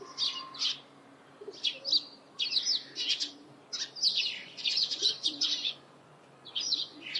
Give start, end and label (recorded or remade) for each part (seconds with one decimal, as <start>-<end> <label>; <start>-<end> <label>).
0.0-4.4 recorded; 4.4-7.2 remade